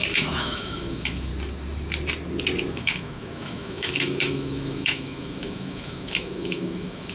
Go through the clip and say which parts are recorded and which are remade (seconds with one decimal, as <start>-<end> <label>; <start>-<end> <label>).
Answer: 0.0-1.3 remade; 1.3-2.7 recorded; 2.7-7.1 remade